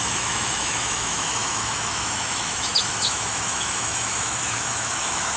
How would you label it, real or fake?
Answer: fake